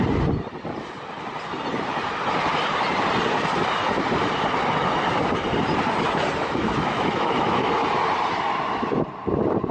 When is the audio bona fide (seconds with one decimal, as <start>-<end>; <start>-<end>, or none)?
0.0-6.4; 7.7-9.7